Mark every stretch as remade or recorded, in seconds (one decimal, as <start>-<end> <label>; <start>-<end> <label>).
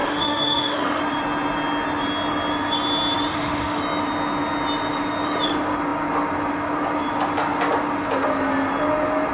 0.0-1.0 remade; 1.0-3.3 recorded; 3.3-3.8 remade; 3.8-9.3 recorded